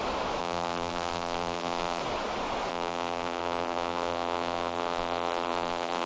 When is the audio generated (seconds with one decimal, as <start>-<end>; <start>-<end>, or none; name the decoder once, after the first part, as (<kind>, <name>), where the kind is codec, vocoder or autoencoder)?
0.4-2.0 (vocoder, BigVGAN v2); 2.7-6.1